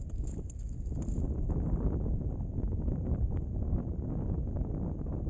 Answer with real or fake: real